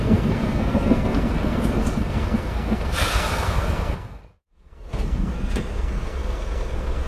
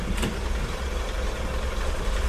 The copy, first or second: first